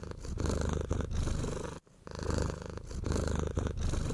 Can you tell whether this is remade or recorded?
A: recorded